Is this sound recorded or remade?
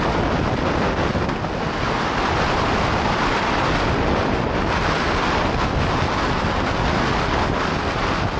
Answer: recorded